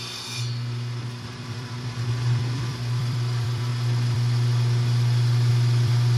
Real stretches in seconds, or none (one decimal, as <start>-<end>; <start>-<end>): none